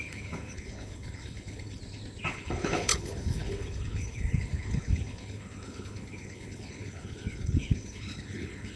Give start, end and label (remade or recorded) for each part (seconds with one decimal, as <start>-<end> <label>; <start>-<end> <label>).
0.0-1.8 remade; 1.8-2.3 recorded; 2.3-8.8 remade